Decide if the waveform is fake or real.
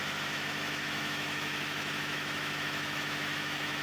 fake